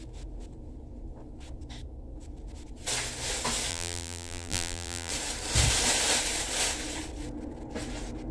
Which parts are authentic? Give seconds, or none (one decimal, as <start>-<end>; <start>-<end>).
0.0-3.7; 5.1-8.3